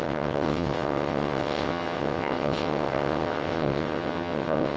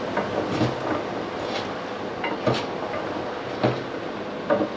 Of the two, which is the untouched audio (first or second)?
second